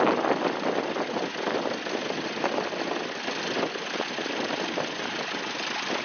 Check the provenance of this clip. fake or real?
real